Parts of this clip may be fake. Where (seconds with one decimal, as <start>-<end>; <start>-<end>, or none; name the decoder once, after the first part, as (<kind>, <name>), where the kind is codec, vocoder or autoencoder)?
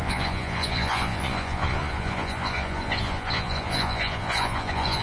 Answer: 0.0-5.0 (vocoder, Vocos)